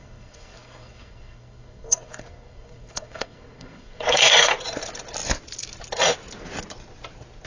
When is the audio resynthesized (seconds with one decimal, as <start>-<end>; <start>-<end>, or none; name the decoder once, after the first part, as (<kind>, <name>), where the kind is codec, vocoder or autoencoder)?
0.0-4.5 (codec, SNAC)